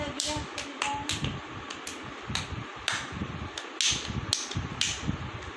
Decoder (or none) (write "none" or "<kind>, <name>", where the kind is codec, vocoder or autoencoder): none